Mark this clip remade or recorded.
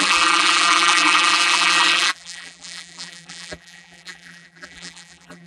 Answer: remade